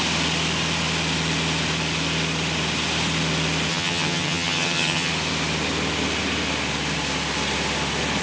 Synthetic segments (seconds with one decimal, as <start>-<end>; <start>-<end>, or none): 3.7-5.1